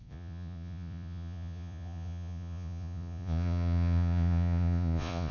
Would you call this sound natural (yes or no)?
no